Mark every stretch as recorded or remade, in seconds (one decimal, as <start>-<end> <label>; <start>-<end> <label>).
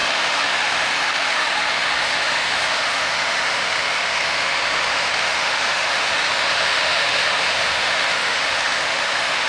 0.0-9.5 remade